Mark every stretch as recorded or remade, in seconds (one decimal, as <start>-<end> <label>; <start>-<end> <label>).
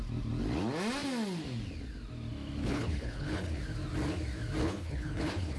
0.0-2.6 recorded; 2.6-3.6 remade; 3.6-4.6 recorded; 4.6-5.6 remade